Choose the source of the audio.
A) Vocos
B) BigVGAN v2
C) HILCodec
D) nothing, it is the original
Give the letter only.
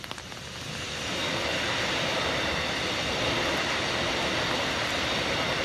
D